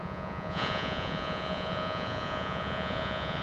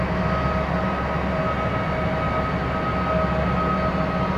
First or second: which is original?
second